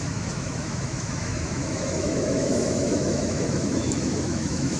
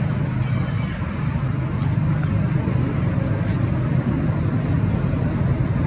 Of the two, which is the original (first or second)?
second